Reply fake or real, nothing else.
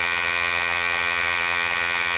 fake